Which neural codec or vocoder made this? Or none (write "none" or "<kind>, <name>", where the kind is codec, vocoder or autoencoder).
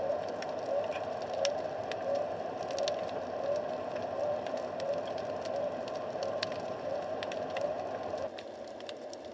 none